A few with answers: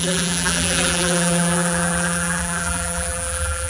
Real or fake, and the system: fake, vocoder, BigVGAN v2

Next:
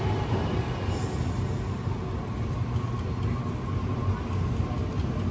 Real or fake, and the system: real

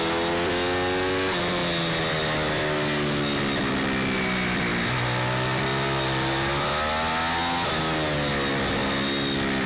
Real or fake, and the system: real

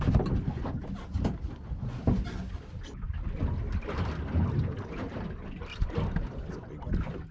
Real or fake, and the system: real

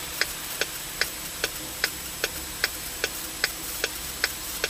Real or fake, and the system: real